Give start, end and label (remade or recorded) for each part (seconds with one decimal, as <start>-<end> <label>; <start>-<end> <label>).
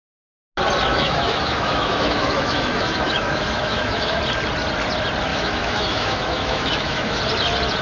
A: 0.0-0.9 recorded; 0.9-4.2 remade; 4.2-5.3 recorded; 5.3-7.2 remade; 7.2-7.8 recorded